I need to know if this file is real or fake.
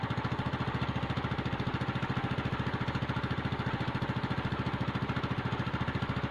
real